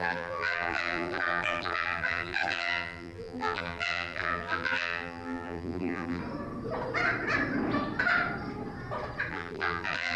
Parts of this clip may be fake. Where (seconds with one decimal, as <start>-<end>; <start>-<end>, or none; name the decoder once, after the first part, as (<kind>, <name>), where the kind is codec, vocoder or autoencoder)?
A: 0.0-6.2 (vocoder, BigVGAN v2); 9.3-10.2